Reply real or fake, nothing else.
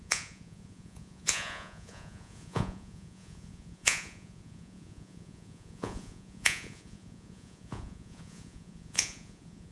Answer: fake